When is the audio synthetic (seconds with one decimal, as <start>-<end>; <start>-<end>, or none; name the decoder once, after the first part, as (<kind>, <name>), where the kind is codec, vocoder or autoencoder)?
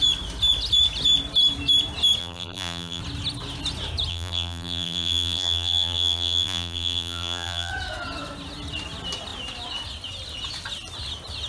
2.2-3.0 (vocoder, BigVGAN v2); 4.1-7.7